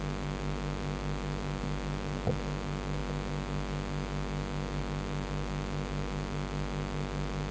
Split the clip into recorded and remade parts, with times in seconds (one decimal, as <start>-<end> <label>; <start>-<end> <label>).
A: 0.0-3.0 remade; 3.0-4.8 recorded; 4.8-7.5 remade